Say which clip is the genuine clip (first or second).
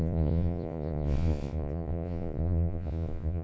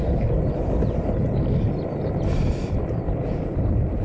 second